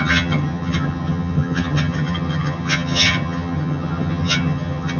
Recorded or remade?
remade